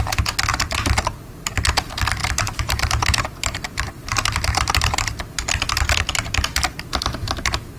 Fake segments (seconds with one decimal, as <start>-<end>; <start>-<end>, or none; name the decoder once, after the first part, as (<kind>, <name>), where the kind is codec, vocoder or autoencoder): 2.2-3.9 (vocoder, BigVGAN v2)